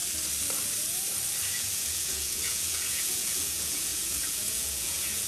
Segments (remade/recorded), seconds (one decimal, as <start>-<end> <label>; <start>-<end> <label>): 0.0-1.5 recorded; 1.5-5.3 remade